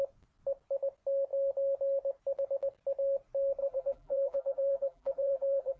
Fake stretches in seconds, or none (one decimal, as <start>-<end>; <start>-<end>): 3.6-5.8